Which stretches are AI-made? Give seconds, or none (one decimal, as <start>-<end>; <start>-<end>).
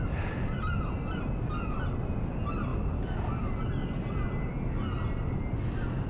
none